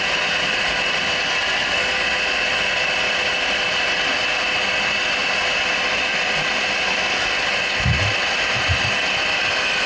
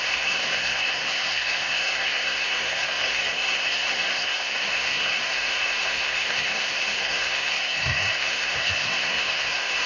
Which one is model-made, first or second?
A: second